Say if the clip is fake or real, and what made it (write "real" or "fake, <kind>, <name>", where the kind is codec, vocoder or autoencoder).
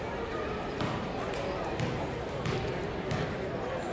real